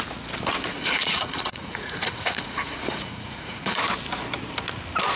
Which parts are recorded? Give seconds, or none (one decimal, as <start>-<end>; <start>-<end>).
0.0-0.7; 3.8-5.2